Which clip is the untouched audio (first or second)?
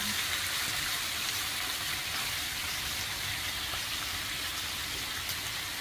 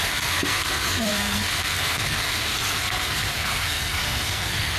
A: first